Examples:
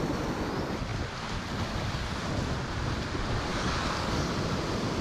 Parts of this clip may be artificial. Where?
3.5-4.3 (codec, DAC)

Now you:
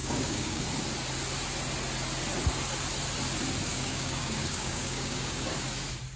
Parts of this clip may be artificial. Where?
0.0-0.6 (codec, DAC); 3.7-5.5